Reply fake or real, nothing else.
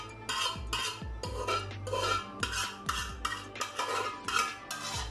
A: real